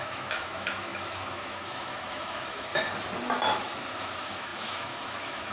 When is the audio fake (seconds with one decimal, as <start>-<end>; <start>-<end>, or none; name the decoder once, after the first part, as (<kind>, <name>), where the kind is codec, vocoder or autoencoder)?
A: 0.0-2.7 (autoencoder, DAC-VAE); 3.5-5.5